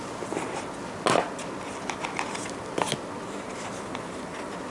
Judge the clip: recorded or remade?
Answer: recorded